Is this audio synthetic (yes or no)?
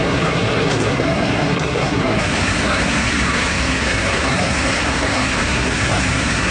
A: yes